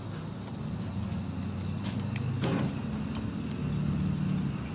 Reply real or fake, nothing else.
real